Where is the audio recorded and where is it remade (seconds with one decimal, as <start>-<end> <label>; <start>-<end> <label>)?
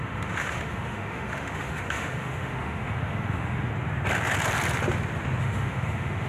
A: 0.0-3.7 remade; 3.7-5.4 recorded; 5.4-6.3 remade